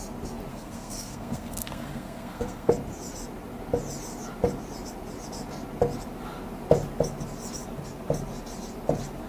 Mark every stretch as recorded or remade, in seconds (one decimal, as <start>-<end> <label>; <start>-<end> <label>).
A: 0.0-0.5 recorded; 0.5-2.7 remade; 2.7-9.3 recorded